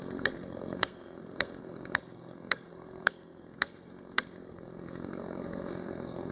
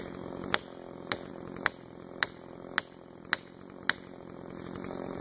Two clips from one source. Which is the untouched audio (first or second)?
second